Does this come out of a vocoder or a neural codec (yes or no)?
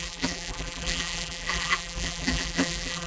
yes